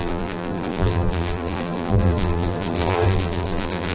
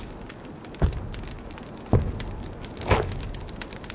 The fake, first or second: first